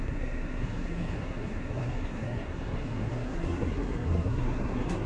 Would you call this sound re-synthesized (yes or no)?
yes